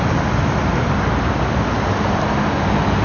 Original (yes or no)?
yes